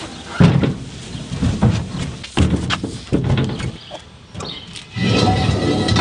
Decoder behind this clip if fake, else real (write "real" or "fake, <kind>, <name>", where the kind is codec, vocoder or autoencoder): real